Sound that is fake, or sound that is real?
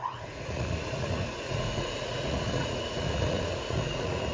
fake